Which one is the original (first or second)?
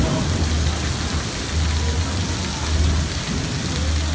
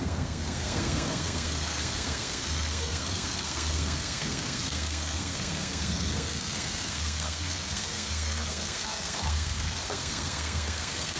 first